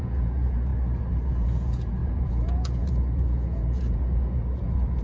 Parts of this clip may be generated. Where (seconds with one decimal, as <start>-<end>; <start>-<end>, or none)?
0.0-0.7; 1.3-5.0